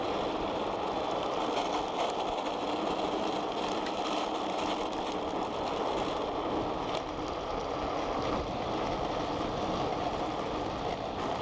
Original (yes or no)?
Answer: yes